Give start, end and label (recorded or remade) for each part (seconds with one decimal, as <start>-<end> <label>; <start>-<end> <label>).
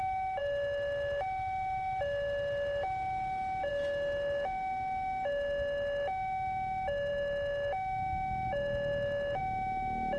0.0-10.2 recorded